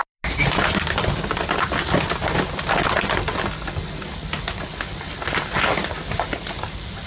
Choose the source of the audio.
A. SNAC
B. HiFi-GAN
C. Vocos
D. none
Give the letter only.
D